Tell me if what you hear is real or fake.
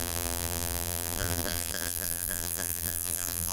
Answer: fake